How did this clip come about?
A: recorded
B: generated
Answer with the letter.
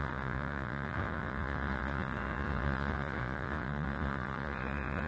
B